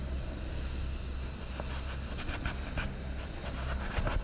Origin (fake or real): real